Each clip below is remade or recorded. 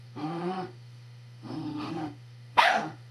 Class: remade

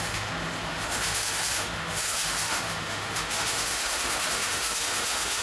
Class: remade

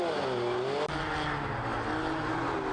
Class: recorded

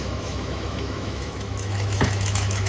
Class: remade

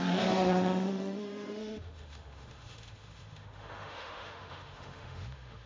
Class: remade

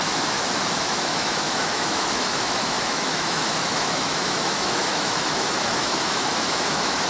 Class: remade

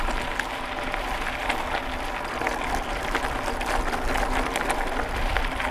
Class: recorded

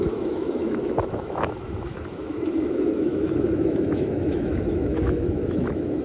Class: remade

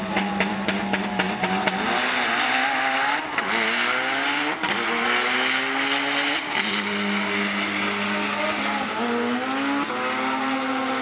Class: recorded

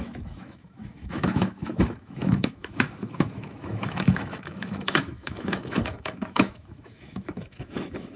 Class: remade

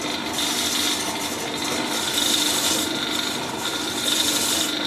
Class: recorded